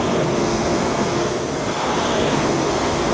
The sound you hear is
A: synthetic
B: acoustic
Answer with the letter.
A